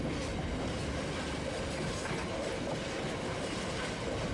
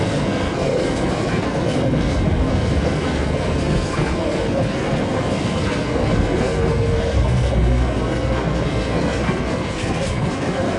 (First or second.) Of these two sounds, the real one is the first